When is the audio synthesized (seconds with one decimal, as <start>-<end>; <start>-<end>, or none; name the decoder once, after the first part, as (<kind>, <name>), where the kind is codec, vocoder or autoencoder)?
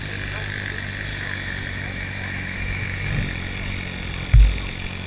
1.1-3.1 (autoencoder, DAC-VAE)